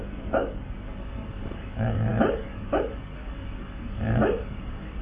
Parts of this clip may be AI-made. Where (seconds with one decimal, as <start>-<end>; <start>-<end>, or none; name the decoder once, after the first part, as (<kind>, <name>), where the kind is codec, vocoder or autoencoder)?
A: 0.0-5.0 (codec, DAC)